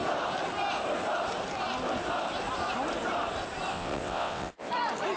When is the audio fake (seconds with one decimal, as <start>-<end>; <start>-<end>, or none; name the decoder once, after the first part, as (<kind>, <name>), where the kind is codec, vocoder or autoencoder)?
3.7-4.7 (vocoder, WaveNeXt)